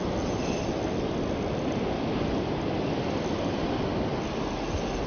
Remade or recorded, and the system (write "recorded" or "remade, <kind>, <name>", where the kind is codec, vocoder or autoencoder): recorded